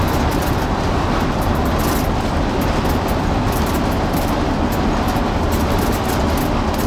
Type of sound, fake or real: real